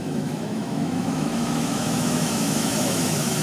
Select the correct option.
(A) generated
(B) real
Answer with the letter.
A